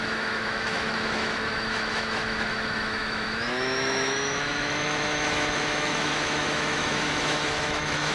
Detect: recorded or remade remade